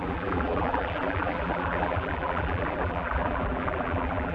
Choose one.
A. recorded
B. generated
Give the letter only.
B